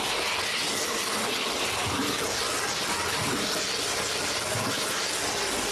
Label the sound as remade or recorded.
recorded